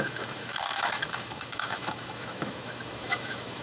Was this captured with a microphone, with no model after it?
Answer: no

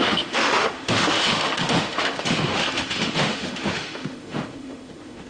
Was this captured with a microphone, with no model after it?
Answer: no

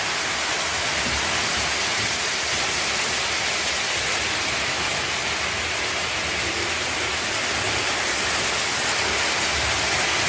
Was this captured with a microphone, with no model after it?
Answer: yes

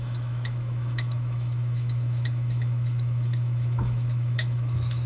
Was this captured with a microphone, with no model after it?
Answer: no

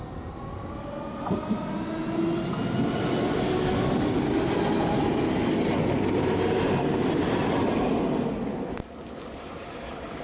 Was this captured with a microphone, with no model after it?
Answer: yes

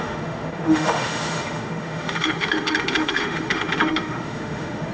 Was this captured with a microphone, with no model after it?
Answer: no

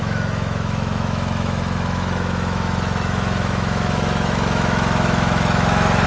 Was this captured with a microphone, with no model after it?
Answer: no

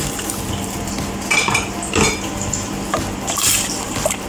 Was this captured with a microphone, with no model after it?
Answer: yes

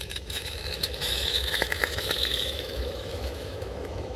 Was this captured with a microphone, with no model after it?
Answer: no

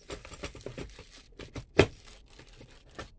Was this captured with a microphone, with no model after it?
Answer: yes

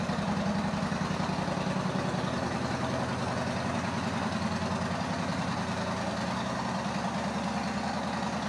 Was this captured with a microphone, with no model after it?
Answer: yes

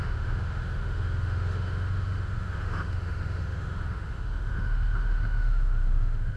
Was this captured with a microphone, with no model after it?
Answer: no